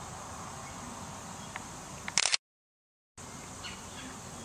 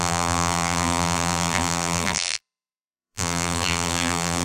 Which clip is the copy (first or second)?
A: second